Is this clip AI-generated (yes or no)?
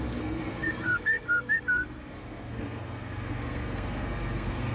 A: yes